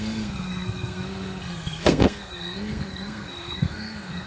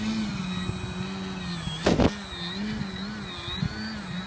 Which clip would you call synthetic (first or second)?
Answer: first